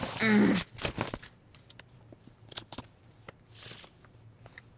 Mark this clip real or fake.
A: real